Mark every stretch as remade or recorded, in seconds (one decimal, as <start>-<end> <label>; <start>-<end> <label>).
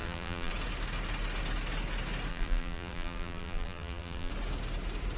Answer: 0.0-0.5 remade; 0.5-2.3 recorded; 2.3-4.3 remade; 4.3-5.2 recorded